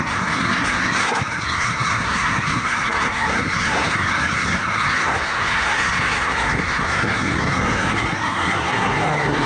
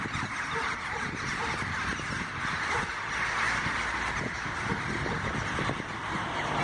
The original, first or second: second